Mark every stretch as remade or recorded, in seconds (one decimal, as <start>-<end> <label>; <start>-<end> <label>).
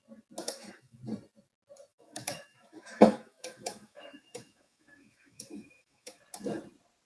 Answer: 0.0-0.4 recorded; 0.4-1.0 remade; 1.0-1.9 recorded; 1.9-6.2 remade; 6.2-7.1 recorded